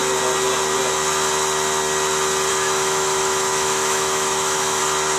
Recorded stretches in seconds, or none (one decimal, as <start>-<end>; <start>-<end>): 0.0-2.5; 4.8-5.2